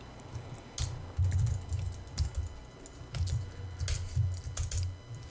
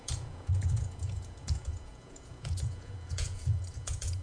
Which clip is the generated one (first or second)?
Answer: second